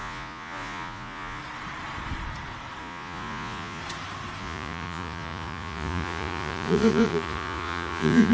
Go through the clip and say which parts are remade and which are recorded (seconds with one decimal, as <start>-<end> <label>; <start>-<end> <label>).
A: 0.0-1.4 remade; 1.4-2.8 recorded; 2.8-3.8 remade; 3.8-4.4 recorded; 4.4-8.3 remade